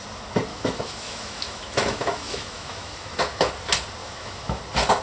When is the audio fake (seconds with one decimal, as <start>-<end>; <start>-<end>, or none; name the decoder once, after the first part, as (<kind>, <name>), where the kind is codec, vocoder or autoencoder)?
0.5-3.5 (autoencoder, DAC-VAE); 4.0-4.6